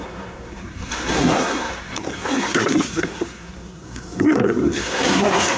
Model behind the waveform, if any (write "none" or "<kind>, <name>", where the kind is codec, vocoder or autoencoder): codec, SNAC